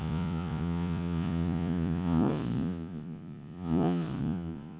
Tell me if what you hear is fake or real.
fake